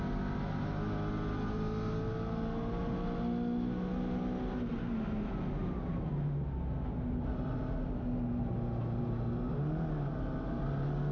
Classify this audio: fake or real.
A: real